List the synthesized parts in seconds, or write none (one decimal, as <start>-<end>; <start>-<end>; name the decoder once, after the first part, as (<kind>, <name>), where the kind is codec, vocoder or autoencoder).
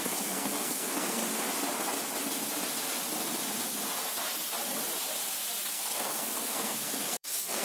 0.0-1.2 (codec, SNAC); 5.7-7.6